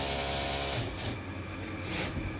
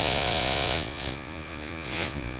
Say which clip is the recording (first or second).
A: first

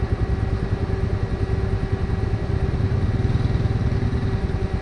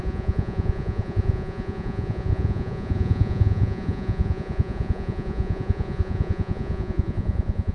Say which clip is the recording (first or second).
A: first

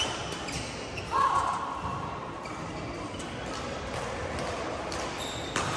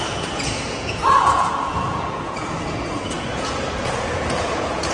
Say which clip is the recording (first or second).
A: first